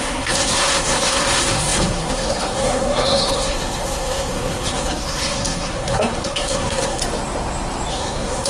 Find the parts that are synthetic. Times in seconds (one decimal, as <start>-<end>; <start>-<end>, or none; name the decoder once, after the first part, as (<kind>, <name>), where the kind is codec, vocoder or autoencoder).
0.0-7.0 (codec, SNAC); 7.9-8.5